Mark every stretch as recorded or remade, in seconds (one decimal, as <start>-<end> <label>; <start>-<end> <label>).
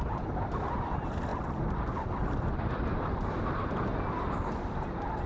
0.0-5.3 recorded